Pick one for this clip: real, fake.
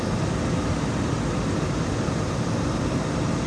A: real